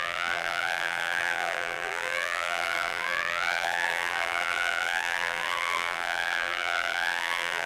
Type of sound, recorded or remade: remade